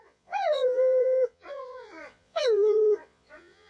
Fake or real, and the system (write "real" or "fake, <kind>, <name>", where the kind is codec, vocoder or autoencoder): fake, vocoder, Vocos